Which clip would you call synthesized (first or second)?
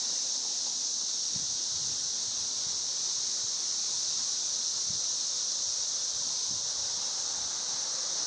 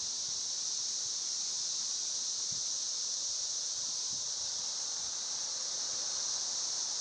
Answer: second